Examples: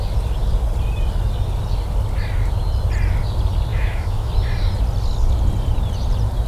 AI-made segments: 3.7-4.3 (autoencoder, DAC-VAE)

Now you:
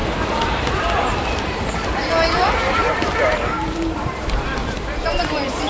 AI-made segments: 0.0-5.7 (vocoder, BigVGAN v2)